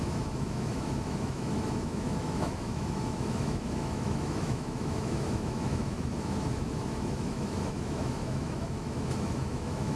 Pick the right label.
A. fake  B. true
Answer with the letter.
A